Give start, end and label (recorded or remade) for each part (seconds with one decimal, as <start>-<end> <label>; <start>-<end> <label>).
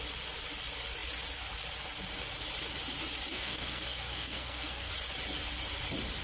0.0-3.3 recorded; 3.3-4.9 remade; 4.9-6.2 recorded